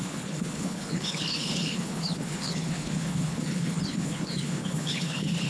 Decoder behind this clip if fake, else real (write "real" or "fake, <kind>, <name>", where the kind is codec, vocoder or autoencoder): fake, codec, HILCodec